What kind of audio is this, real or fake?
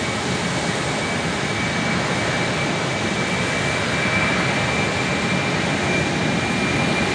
real